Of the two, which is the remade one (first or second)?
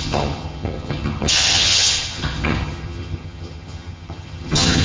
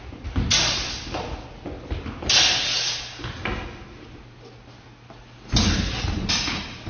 first